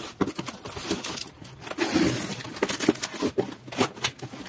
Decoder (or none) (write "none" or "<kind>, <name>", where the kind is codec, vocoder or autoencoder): none